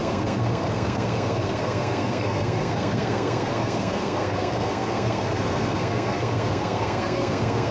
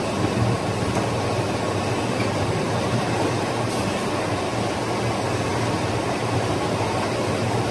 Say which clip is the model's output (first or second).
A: first